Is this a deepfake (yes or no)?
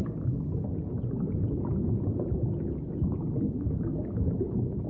no